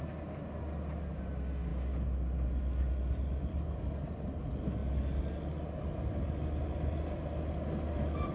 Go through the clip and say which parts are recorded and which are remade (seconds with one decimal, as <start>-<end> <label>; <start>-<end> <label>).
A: 0.0-8.3 recorded